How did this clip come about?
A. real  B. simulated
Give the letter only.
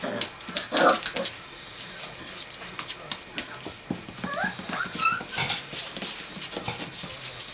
A